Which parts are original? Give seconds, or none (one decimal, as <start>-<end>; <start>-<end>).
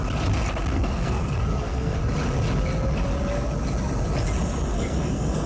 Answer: 0.0-0.7; 2.0-4.7